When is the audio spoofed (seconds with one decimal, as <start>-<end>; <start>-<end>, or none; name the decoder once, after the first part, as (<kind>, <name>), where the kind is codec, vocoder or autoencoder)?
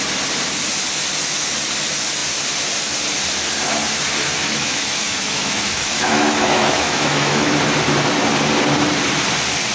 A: 4.4-7.5 (autoencoder, DAC-VAE)